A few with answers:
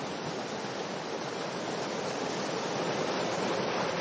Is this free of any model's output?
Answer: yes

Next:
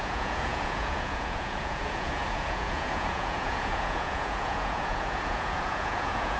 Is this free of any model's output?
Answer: no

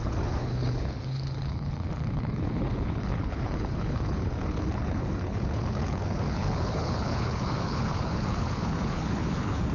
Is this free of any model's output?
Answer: no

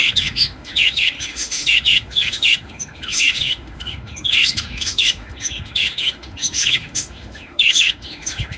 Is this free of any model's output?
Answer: no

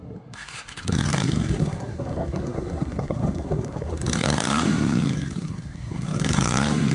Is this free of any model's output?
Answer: no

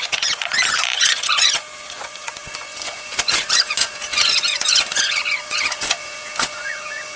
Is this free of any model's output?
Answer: no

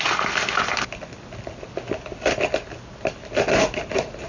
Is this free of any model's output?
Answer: yes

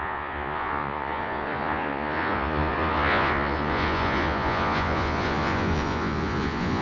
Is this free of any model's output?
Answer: no